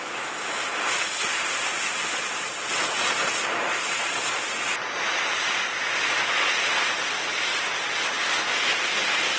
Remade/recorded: recorded